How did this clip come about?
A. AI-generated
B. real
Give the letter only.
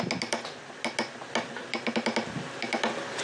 B